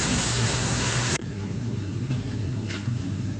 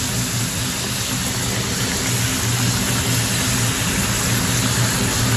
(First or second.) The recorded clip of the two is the second